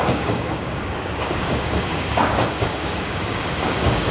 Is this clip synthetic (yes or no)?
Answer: yes